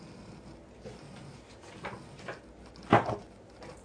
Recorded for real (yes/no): yes